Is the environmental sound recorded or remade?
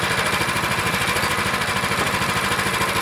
recorded